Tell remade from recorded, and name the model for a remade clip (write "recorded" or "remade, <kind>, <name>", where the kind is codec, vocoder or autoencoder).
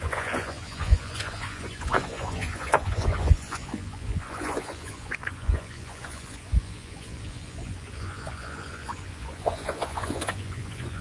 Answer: remade, vocoder, Vocos